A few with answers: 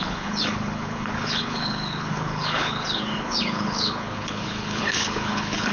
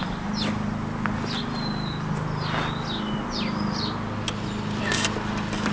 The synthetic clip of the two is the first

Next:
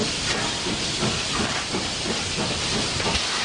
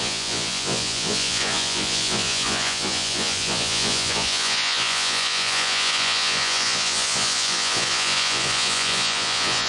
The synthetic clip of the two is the second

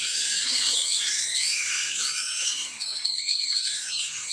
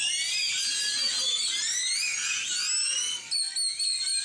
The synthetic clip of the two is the first